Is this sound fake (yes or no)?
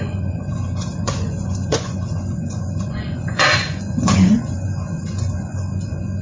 yes